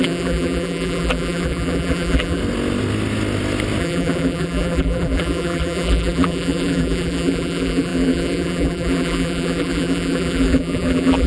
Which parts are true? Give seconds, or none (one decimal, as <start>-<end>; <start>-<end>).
2.4-3.8